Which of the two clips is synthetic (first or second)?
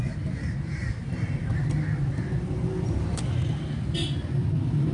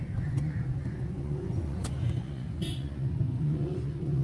second